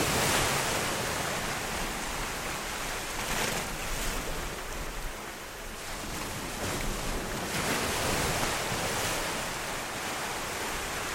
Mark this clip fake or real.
real